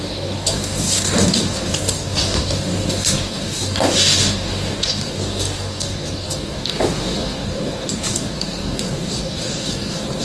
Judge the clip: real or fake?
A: fake